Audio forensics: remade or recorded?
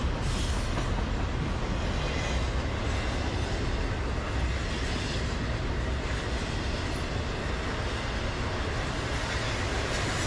recorded